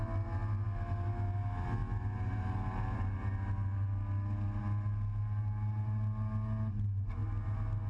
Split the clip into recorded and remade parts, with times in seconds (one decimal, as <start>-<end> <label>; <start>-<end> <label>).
0.0-7.9 recorded